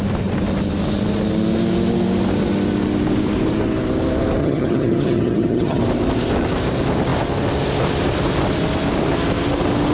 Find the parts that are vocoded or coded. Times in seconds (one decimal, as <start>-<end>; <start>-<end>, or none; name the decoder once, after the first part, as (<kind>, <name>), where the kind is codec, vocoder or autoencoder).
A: 4.4-5.8 (vocoder, HiFi-GAN)